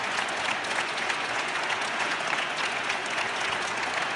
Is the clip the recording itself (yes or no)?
no